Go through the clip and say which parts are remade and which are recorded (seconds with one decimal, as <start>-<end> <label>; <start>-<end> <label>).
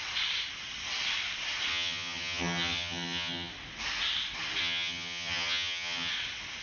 0.0-1.7 recorded; 1.7-3.5 remade; 3.5-4.6 recorded; 4.6-6.1 remade; 6.1-6.6 recorded